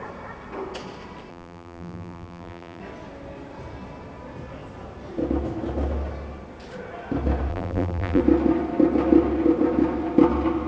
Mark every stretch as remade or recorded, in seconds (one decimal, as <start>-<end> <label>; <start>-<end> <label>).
0.0-1.3 recorded; 1.3-2.8 remade; 2.8-7.5 recorded; 7.5-8.2 remade; 8.2-10.7 recorded